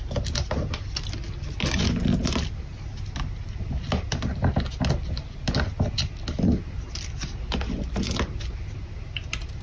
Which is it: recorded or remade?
recorded